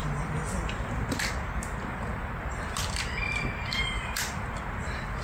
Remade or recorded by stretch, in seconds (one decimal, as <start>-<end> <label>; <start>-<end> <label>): 0.0-1.3 remade; 1.3-2.1 recorded; 2.1-4.6 remade; 4.6-5.2 recorded